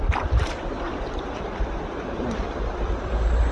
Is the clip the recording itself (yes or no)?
no